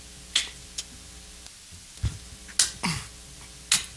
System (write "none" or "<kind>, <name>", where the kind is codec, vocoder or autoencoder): none